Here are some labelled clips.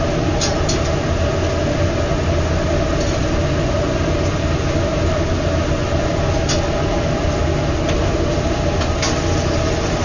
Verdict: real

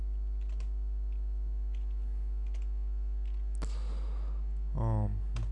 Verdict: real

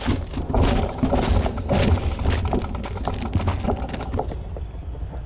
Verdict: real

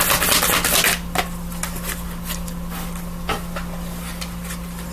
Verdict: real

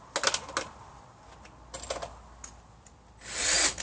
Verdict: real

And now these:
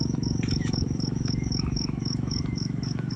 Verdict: fake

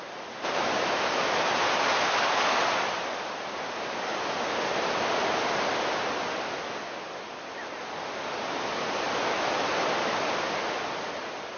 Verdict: real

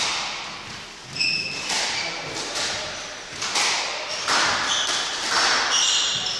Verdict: real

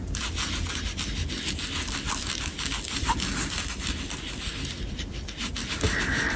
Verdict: real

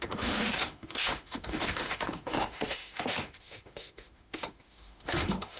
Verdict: fake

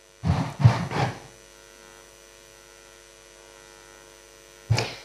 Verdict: real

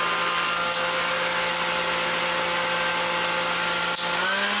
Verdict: real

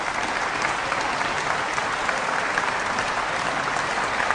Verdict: real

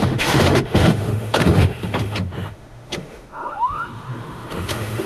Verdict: fake